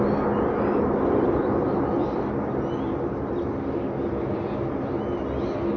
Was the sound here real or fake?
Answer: real